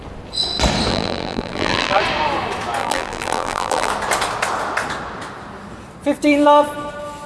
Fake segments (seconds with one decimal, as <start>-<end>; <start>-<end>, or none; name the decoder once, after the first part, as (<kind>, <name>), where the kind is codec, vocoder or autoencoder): 0.9-2.0 (vocoder, BigVGAN v2); 2.8-3.9